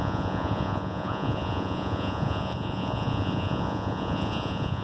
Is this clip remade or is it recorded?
remade